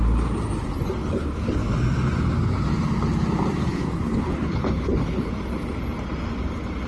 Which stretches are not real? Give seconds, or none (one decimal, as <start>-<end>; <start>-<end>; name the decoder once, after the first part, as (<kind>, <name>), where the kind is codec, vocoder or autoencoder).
1.0-1.6 (codec, HILCodec); 3.6-5.3